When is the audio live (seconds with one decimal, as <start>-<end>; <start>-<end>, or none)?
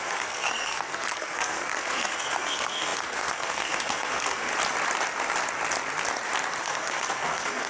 4.5-6.6